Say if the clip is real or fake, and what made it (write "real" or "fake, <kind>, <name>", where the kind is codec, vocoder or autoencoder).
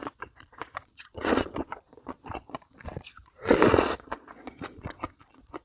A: fake, vocoder, Vocos